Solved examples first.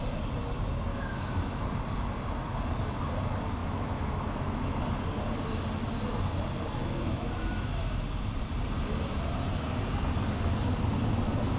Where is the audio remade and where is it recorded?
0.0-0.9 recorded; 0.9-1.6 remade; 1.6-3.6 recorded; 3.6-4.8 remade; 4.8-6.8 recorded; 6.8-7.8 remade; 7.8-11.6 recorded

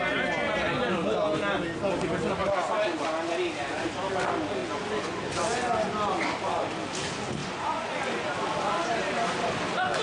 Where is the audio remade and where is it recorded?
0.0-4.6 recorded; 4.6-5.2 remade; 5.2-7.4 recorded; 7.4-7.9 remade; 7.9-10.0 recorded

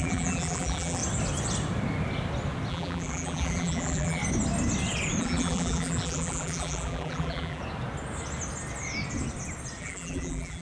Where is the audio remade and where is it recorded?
0.0-1.0 remade; 1.0-2.7 recorded; 2.7-4.2 remade; 4.2-5.2 recorded; 5.2-7.6 remade; 7.6-9.8 recorded; 9.8-10.6 remade

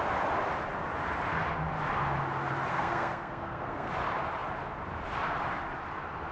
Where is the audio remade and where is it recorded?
0.0-2.7 recorded; 2.7-3.9 remade; 3.9-6.3 recorded

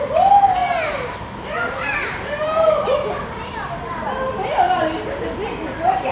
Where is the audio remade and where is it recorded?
0.0-0.6 recorded; 0.6-4.3 remade; 4.3-6.1 recorded

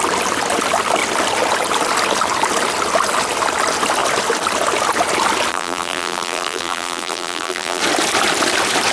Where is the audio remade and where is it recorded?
0.0-5.5 recorded; 5.5-7.8 remade; 7.8-8.9 recorded